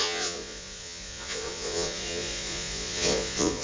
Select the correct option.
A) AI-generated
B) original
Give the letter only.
A